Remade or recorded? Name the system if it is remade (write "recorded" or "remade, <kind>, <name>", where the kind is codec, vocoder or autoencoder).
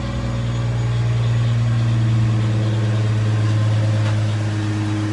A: recorded